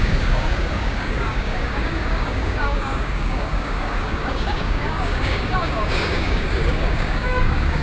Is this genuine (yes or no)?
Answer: no